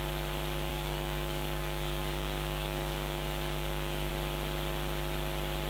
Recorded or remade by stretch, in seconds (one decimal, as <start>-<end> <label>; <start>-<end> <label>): 0.0-0.7 recorded; 0.7-4.1 remade; 4.1-5.7 recorded